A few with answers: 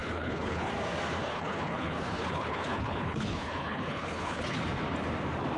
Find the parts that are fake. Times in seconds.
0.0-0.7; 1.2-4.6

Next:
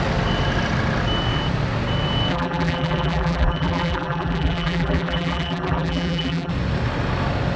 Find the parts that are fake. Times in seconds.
2.3-6.5